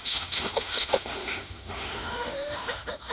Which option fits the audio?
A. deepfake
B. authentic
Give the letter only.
A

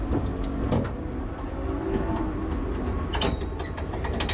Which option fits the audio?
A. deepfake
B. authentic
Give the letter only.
B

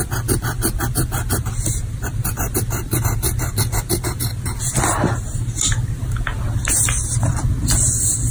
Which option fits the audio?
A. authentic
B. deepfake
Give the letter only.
A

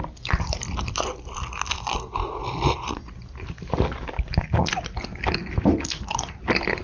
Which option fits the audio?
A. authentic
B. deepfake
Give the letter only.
A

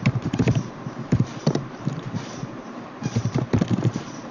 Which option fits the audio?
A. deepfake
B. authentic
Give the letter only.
A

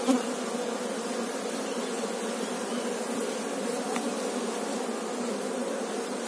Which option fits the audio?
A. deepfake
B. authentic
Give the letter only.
B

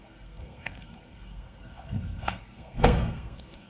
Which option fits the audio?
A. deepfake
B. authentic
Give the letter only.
A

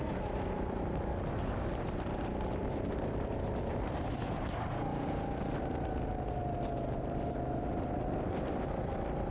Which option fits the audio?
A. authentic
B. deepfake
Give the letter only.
A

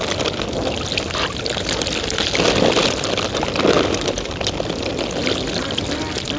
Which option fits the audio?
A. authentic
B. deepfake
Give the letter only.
A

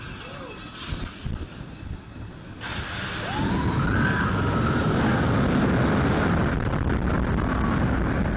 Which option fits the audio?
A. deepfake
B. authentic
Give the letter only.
B